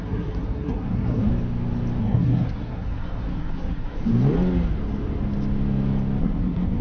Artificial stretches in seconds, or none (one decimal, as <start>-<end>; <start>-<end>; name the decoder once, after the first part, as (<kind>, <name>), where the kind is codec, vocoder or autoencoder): 0.0-1.3 (codec, SNAC); 2.0-4.0; 6.2-6.8